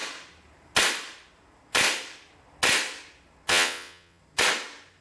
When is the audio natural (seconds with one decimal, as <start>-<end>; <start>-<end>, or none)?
0.0-3.5; 4.2-5.0